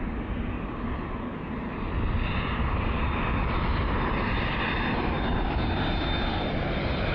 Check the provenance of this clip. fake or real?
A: real